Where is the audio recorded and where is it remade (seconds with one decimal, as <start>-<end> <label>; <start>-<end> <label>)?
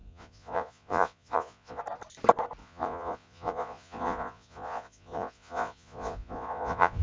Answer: 0.0-1.8 remade; 1.8-2.6 recorded; 2.6-7.0 remade